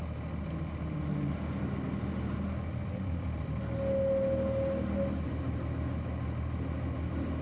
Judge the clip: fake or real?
real